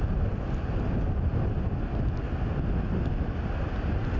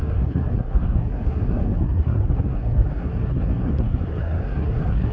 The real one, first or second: first